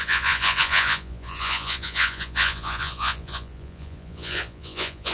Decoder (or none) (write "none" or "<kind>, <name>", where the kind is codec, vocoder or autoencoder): vocoder, Vocos